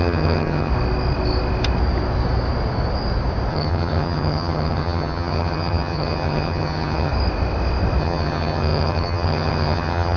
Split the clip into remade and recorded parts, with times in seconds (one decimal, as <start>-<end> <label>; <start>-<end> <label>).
0.0-0.7 remade; 0.7-3.5 recorded; 3.5-7.1 remade; 7.1-8.0 recorded; 8.0-10.2 remade